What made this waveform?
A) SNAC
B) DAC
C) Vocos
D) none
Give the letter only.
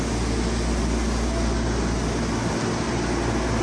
D